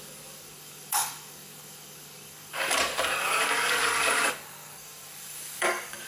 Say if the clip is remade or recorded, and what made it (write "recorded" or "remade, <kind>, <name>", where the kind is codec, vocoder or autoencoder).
remade, codec, DAC